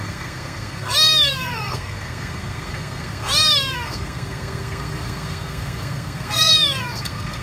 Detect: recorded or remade remade